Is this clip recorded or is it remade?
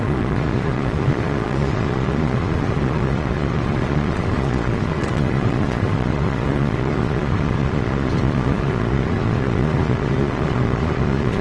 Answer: remade